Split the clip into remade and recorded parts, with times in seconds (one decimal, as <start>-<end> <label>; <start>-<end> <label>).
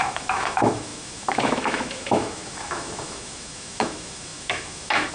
0.0-5.1 remade